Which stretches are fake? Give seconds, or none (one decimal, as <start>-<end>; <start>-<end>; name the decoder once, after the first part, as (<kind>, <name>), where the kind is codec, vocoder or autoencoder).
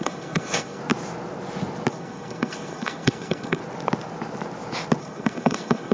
0.0-0.8 (codec, SNAC); 1.9-3.6; 5.0-5.9